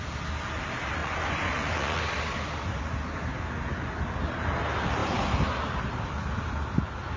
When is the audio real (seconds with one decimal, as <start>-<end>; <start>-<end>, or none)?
0.0-1.0; 2.0-7.2